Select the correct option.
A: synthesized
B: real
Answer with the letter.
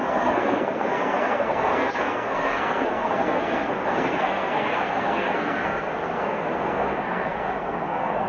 A